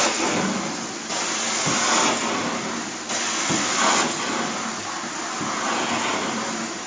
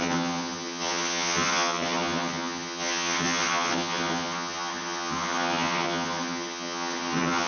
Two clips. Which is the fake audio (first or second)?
second